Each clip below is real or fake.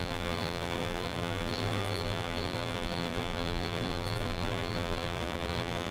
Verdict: fake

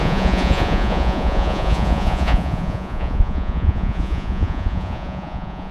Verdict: fake